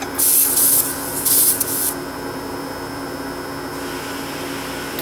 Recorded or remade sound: recorded